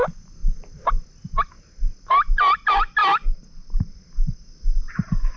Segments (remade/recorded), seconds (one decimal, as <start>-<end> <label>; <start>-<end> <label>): 0.0-5.4 recorded